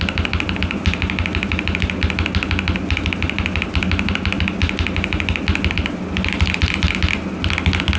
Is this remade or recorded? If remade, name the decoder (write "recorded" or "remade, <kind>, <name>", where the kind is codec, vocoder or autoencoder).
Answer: recorded